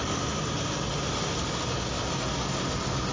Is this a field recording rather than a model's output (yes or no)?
yes